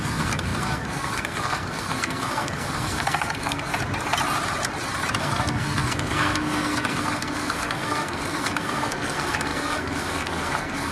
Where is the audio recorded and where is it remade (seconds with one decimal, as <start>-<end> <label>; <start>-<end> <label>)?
0.0-3.7 remade; 3.7-5.2 recorded; 5.2-10.9 remade